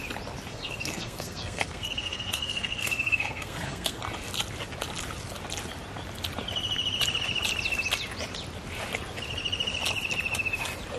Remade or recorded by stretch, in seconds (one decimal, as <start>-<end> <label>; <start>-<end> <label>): 0.0-0.5 recorded; 0.5-4.0 remade; 4.0-11.0 recorded